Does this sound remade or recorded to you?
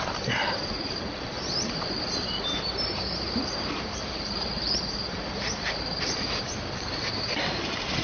remade